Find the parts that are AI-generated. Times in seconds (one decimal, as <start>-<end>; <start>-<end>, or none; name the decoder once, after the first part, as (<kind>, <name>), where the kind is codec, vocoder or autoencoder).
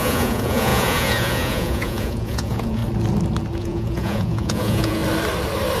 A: 0.0-2.8 (vocoder, Vocos); 3.6-5.0